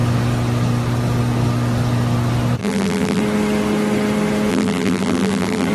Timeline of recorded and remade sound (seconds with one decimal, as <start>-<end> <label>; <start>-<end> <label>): 0.0-2.6 recorded; 2.6-3.2 remade; 3.2-4.5 recorded; 4.5-5.7 remade